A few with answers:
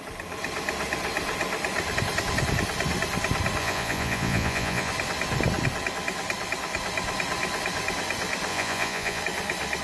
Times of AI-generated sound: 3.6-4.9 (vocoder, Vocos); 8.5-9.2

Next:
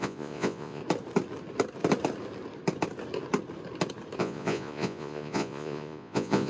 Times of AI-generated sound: 0.0-0.8 (vocoder, Vocos); 4.2-6.5

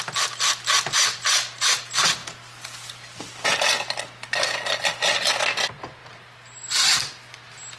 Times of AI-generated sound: none

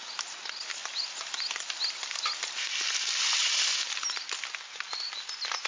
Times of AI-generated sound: none

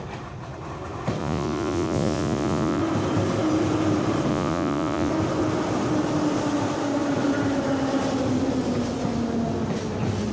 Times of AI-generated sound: 1.2-2.8 (vocoder, Vocos); 4.3-5.1

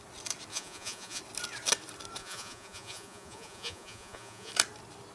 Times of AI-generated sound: 0.5-1.2 (vocoder, Vocos); 2.2-4.5

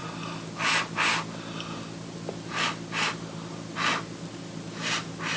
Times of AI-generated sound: none